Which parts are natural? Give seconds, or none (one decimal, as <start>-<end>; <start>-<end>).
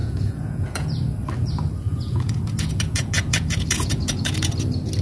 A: 1.0-1.9; 4.5-5.0